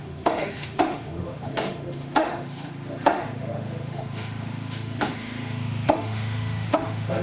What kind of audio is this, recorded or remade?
remade